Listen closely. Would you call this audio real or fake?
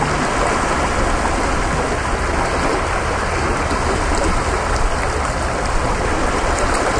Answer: real